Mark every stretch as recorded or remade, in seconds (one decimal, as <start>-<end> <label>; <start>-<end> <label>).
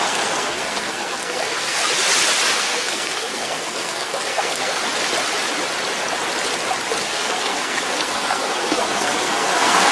0.0-1.8 remade; 1.8-2.6 recorded; 2.6-4.8 remade; 4.8-7.0 recorded; 7.0-9.9 remade